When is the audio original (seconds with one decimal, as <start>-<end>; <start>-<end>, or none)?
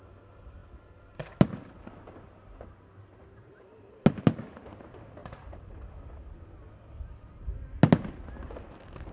0.0-5.2; 5.9-9.1